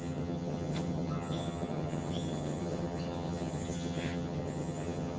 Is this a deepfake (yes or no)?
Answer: yes